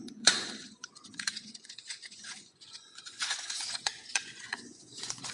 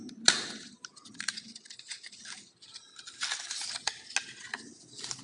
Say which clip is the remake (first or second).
first